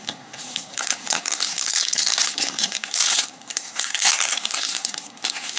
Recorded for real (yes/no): no